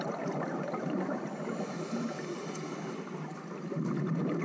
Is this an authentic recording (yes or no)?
yes